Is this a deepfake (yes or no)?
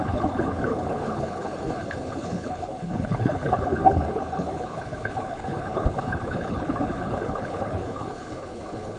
yes